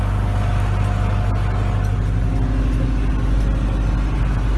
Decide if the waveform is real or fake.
real